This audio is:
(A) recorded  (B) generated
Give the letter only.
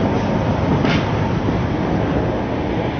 A